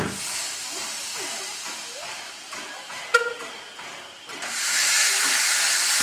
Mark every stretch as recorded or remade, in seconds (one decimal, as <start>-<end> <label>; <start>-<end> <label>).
0.0-4.7 recorded; 4.7-5.4 remade; 5.4-6.0 recorded